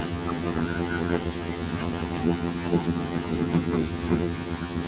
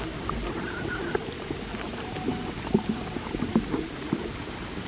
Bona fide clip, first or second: second